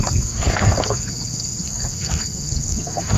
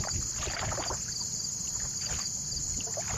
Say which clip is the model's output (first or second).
first